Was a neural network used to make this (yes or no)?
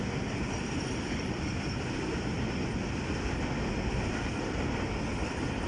no